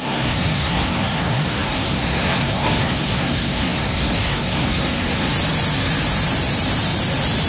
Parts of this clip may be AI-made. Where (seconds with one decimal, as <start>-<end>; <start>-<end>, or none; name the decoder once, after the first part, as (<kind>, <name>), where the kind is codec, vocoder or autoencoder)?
0.0-5.3 (codec, SNAC)